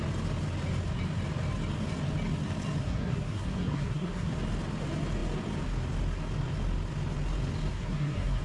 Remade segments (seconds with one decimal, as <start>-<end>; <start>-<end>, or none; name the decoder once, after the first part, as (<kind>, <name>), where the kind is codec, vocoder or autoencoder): 2.8-4.3 (codec, SNAC); 7.7-8.4